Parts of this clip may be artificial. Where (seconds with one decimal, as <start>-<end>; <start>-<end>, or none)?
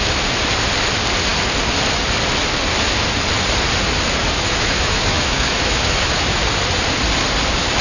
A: 4.2-6.4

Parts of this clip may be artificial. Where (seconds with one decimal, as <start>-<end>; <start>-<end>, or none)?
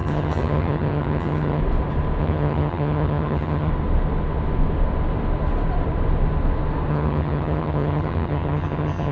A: 0.0-1.6; 2.2-3.7; 6.9-9.1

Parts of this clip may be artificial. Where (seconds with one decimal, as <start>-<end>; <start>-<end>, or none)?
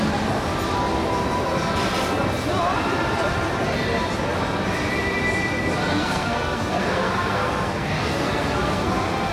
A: 5.9-8.9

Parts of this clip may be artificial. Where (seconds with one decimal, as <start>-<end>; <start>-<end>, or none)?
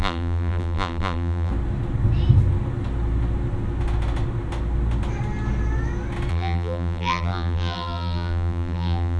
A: 0.0-1.5; 6.3-9.2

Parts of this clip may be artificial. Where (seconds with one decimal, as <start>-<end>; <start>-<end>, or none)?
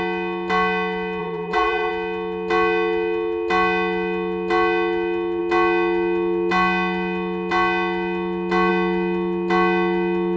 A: 1.2-1.9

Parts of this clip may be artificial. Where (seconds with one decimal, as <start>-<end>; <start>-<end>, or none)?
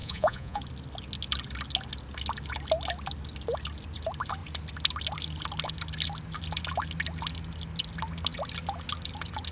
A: 0.0-0.6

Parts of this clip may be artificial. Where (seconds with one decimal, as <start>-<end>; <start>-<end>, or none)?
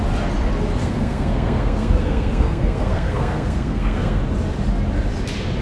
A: 0.8-4.2